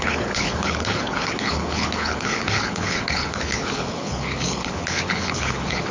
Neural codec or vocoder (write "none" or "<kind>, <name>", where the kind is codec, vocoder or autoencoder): codec, HILCodec